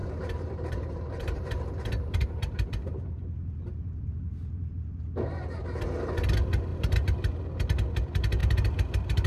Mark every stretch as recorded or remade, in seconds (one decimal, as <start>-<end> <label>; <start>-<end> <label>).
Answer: 0.0-4.7 remade; 4.7-6.7 recorded; 6.7-7.3 remade; 7.3-8.4 recorded; 8.4-9.3 remade